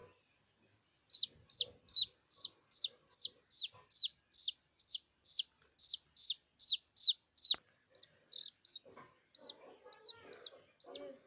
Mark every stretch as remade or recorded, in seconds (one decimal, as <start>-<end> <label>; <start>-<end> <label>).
0.0-11.3 recorded